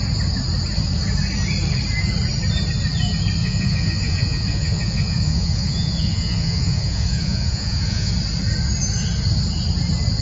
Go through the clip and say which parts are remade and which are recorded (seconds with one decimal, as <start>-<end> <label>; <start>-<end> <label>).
0.0-3.4 recorded; 3.4-8.1 remade; 8.1-10.2 recorded